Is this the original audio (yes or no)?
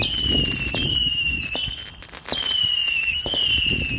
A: yes